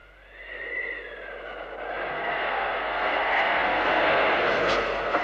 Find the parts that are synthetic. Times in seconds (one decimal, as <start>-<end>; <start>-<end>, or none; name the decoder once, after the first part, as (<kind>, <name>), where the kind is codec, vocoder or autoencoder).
2.1-5.2 (codec, SNAC)